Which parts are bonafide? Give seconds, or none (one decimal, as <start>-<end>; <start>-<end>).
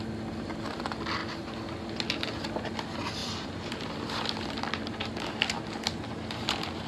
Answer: 0.0-3.2; 3.7-6.9